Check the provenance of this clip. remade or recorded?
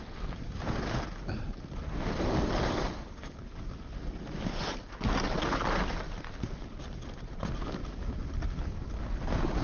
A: recorded